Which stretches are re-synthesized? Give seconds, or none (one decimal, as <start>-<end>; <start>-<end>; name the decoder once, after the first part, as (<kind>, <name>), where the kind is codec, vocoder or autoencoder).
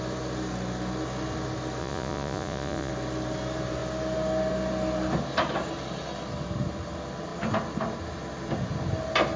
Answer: 1.8-2.9 (vocoder, Vocos)